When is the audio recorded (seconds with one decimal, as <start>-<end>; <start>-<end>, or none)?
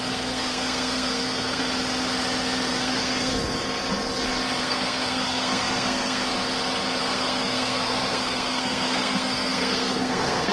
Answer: 1.6-2.7; 3.3-4.6; 6.3-7.0